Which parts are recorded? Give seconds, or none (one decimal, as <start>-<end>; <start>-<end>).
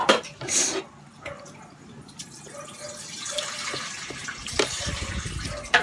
0.8-4.2; 5.2-5.8